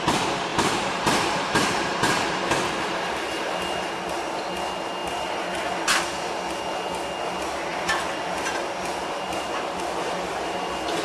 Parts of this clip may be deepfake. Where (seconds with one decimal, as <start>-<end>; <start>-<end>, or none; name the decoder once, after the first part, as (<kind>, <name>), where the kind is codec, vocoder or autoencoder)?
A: 0.5-2.2 (vocoder, BigVGAN v2); 7.7-9.8